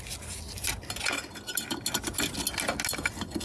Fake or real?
real